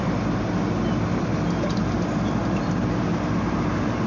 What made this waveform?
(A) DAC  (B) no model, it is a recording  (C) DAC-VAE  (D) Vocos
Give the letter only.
B